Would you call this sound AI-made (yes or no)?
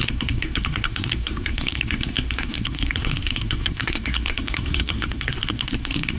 yes